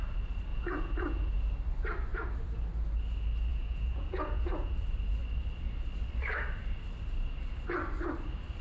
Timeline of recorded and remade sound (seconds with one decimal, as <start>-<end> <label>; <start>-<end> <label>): 0.0-0.5 recorded; 0.5-1.3 remade; 1.3-3.5 recorded; 3.5-4.7 remade; 4.7-8.6 recorded